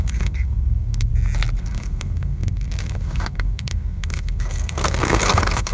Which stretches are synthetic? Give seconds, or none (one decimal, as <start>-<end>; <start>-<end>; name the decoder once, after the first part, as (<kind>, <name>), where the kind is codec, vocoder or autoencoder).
0.0-1.1 (codec, SNAC); 1.6-5.7